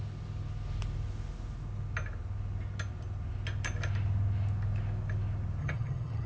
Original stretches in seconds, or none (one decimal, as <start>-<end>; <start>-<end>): 0.0-5.6